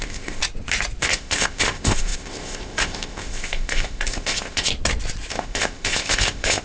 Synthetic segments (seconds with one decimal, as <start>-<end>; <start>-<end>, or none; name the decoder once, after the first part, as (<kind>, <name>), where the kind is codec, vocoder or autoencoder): 0.0-0.4 (codec, ZipCodec); 1.0-4.7; 5.3-6.6